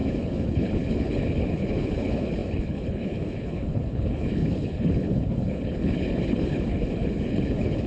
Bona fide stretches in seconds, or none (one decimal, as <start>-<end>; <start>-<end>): none